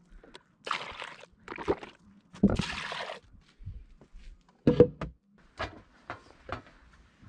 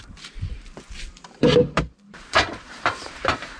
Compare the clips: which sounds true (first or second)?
first